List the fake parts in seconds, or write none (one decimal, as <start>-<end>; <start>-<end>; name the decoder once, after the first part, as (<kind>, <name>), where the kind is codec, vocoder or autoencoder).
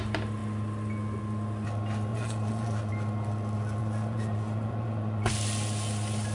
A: 2.1-2.9 (vocoder, Vocos); 3.8-5.3